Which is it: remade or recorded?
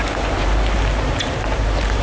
remade